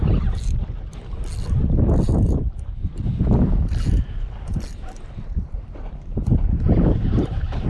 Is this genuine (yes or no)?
yes